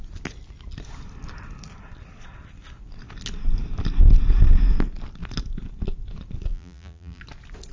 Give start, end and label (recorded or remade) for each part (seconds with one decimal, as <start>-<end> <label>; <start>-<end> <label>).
0.0-6.5 recorded; 6.5-7.2 remade; 7.2-7.7 recorded